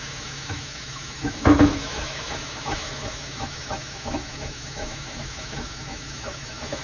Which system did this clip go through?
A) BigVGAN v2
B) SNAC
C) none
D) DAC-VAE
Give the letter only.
D